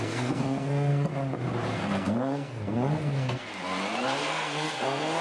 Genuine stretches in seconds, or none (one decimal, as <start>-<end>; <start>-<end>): 1.1-1.7; 3.5-4.2